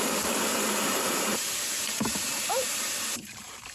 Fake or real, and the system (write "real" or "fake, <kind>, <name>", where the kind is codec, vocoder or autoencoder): fake, vocoder, BigVGAN v2